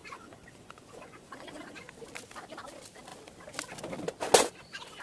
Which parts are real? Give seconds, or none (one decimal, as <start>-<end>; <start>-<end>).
1.8-5.0